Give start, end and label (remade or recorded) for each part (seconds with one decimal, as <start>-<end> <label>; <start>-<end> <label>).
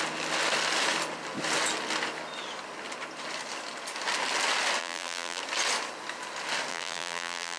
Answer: 0.0-4.8 recorded; 4.8-5.4 remade; 5.4-6.7 recorded; 6.7-7.6 remade